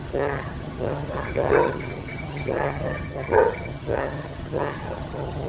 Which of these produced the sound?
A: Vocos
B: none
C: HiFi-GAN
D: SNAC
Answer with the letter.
C